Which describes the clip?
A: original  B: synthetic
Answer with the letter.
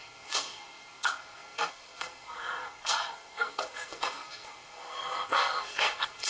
B